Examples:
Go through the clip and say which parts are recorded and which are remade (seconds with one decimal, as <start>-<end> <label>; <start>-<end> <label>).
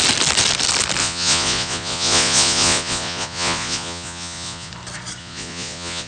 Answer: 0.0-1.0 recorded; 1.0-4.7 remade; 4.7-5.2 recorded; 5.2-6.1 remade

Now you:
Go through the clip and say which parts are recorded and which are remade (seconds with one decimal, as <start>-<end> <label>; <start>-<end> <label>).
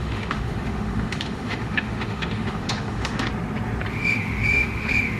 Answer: 0.0-3.3 remade; 3.3-3.9 recorded; 3.9-5.2 remade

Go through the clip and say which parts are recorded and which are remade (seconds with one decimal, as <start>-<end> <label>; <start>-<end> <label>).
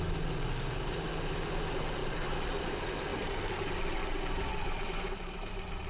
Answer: 0.0-2.0 recorded; 2.0-2.6 remade; 2.6-3.1 recorded; 3.1-4.6 remade; 4.6-5.9 recorded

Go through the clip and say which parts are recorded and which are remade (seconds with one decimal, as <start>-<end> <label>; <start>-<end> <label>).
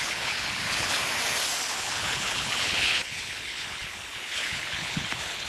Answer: 0.0-1.0 remade; 1.0-1.8 recorded; 1.8-5.5 remade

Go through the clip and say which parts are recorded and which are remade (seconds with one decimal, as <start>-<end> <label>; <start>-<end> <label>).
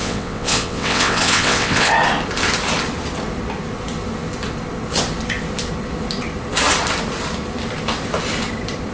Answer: 0.0-1.9 remade; 1.9-8.9 recorded